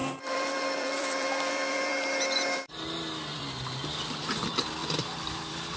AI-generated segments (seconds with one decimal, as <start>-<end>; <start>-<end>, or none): 0.0-3.4; 4.8-5.8